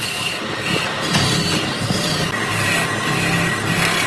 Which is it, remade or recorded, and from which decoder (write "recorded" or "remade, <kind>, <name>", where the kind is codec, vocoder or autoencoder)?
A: recorded